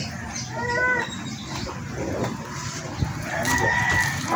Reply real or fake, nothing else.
real